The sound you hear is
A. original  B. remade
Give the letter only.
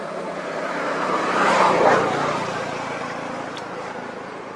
B